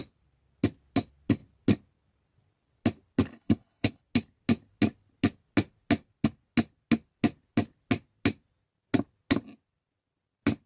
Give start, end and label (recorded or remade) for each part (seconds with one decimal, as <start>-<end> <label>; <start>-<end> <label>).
0.0-3.3 recorded; 3.3-4.0 remade; 4.0-10.7 recorded